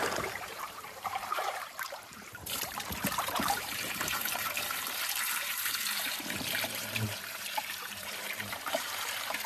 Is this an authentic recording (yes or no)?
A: no